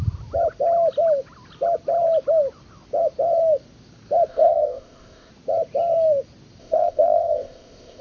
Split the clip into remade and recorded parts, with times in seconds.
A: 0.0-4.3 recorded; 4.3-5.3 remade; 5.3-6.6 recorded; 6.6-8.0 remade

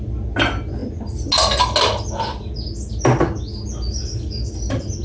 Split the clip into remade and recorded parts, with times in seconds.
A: 0.0-5.0 recorded

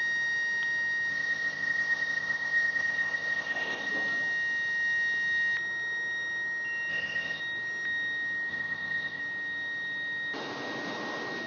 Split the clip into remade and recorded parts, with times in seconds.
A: 0.0-1.1 recorded; 1.1-3.9 remade; 3.9-6.9 recorded; 6.9-7.4 remade; 7.4-8.5 recorded; 8.5-9.2 remade; 9.2-11.5 recorded

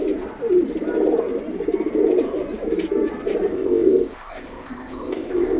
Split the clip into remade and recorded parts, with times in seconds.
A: 0.0-3.5 recorded; 3.5-5.6 remade

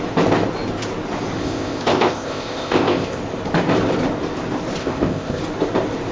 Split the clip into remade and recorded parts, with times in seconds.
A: 0.0-1.4 recorded; 1.4-3.2 remade; 3.2-4.8 recorded; 4.8-5.4 remade; 5.4-6.1 recorded

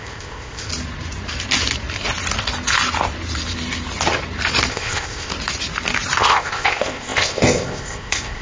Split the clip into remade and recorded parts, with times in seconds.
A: 0.0-0.7 remade; 0.7-4.7 recorded; 4.7-5.3 remade; 5.3-6.2 recorded; 6.2-8.4 remade

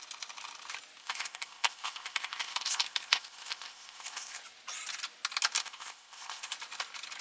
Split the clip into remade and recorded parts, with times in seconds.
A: 0.0-1.0 recorded; 1.0-4.4 remade; 4.4-5.6 recorded; 5.6-6.5 remade; 6.5-7.2 recorded